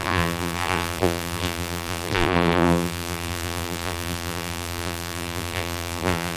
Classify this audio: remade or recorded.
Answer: remade